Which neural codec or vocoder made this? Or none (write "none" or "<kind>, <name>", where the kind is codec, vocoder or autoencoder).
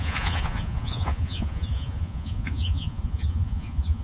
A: vocoder, Vocos